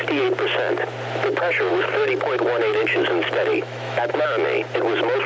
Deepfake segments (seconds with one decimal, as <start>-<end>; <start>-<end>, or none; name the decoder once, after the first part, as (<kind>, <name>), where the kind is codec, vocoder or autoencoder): 1.7-4.1 (autoencoder, DAC-VAE)